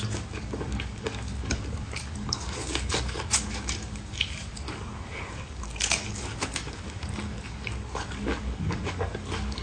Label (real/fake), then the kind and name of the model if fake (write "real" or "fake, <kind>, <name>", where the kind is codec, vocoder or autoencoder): fake, codec, DAC